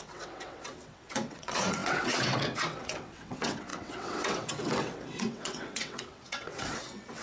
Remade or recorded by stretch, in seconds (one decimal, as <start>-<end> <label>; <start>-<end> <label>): 0.0-7.2 remade